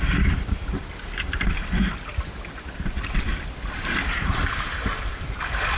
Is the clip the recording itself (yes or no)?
yes